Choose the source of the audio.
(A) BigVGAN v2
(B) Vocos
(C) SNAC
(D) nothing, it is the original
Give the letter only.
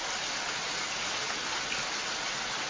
D